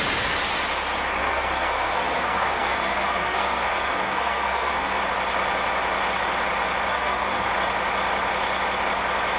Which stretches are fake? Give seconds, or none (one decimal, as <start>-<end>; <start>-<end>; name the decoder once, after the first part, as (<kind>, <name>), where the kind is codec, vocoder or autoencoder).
1.2-5.0 (codec, SNAC); 6.9-7.5